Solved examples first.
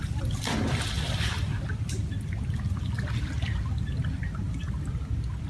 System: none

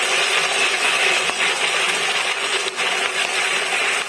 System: vocoder, Vocos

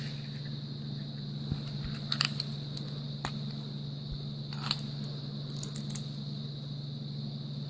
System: none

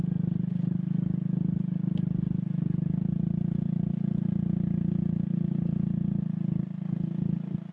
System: none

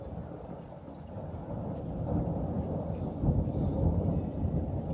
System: none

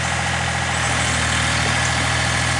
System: none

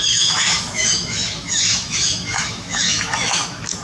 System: autoencoder, DAC-VAE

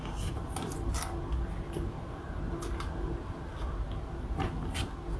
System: none